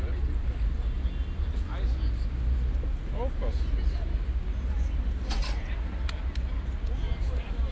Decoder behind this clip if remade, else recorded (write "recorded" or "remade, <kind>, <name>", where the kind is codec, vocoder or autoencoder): recorded